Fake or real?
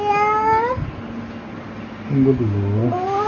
real